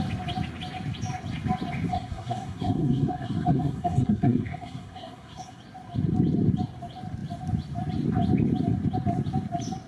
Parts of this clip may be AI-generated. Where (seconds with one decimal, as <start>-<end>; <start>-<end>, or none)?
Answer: 1.9-5.6